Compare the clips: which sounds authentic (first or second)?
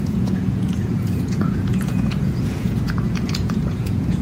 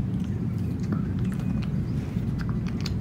second